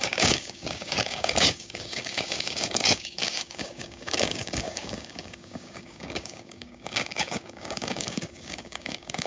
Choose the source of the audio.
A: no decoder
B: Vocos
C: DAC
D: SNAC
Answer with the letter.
C